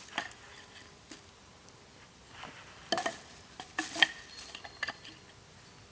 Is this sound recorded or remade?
recorded